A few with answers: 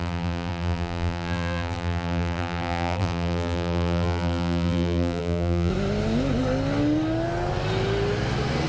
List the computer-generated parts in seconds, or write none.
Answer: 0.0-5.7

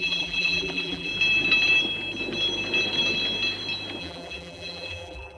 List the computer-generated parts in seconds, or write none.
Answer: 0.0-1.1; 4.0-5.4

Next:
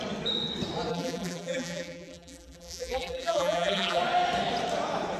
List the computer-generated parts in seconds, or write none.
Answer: 0.9-4.0

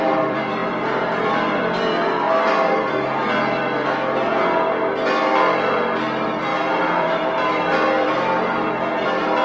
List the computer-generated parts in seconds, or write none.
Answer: 0.0-4.3; 5.1-9.4